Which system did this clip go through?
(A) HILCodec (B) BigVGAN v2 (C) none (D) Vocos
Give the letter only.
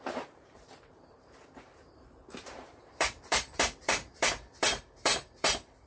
B